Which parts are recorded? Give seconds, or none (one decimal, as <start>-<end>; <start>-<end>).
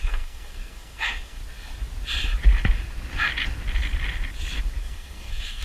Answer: 1.4-4.8